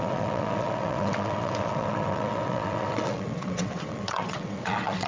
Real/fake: fake